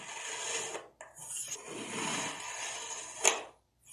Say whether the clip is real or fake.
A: real